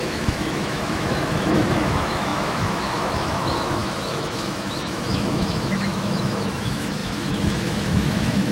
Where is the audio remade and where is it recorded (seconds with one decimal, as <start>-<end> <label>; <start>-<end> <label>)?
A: 0.0-8.5 remade